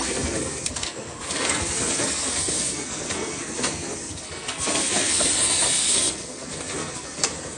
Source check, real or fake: fake